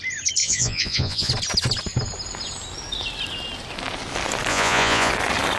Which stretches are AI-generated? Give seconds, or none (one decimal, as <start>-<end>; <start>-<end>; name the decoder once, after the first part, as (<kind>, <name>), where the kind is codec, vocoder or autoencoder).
0.4-1.3 (vocoder, Vocos); 4.5-5.1